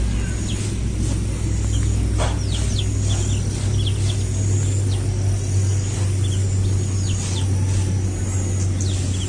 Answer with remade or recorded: recorded